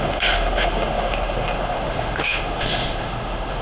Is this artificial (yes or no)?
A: yes